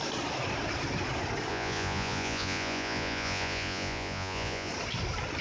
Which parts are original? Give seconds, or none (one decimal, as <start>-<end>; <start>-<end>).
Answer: 0.0-1.5; 4.7-5.4